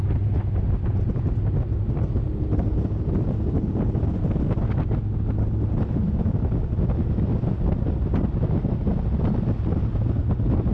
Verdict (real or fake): real